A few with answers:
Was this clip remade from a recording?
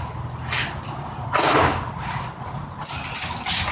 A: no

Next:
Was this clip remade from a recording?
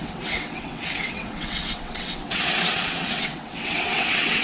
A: yes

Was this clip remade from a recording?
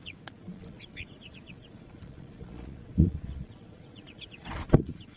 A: yes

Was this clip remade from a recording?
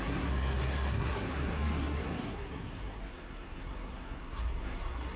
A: yes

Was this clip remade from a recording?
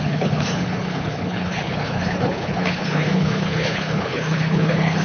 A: yes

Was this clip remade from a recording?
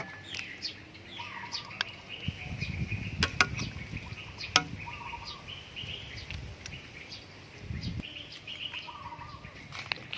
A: no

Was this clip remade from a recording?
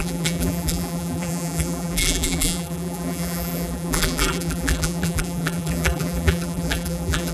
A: yes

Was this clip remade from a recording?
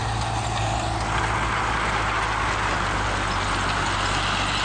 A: no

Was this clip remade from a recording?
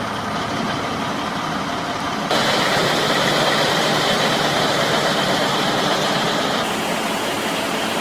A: no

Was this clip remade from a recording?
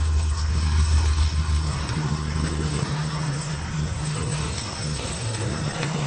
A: yes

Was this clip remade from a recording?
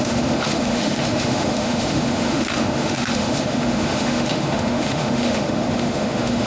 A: yes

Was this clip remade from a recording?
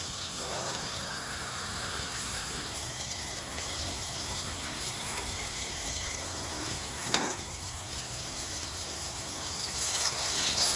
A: yes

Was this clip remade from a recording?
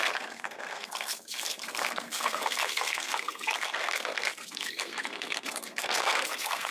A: yes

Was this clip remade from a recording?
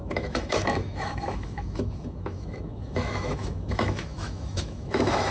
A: yes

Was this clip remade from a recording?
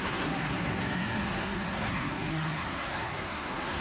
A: yes